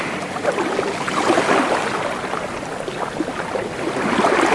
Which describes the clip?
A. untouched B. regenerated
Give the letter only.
A